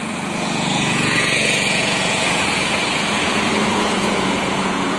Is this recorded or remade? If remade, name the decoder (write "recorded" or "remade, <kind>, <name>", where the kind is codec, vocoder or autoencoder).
remade, vocoder, Vocos